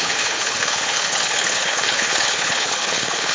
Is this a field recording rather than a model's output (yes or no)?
no